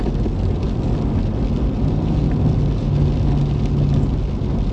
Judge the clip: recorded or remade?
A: recorded